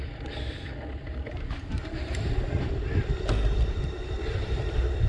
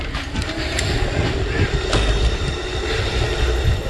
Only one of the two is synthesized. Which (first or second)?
first